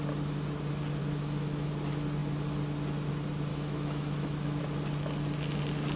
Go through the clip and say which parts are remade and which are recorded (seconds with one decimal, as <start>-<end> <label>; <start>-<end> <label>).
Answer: 0.0-1.0 recorded; 1.0-1.7 remade; 1.7-3.5 recorded; 3.5-4.6 remade; 4.6-6.0 recorded